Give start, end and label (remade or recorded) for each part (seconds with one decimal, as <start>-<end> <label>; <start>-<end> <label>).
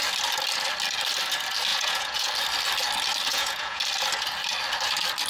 0.0-1.7 recorded; 1.7-2.3 remade; 2.3-3.3 recorded; 3.3-3.8 remade; 3.8-5.3 recorded